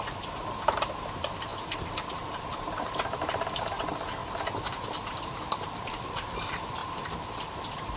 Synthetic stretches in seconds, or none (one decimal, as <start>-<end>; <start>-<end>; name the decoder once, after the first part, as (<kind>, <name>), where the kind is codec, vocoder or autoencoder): 0.0-4.2 (vocoder, BigVGAN v2); 5.0-6.8; 7.5-8.0